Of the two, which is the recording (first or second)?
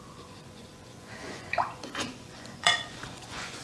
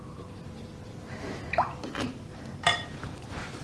second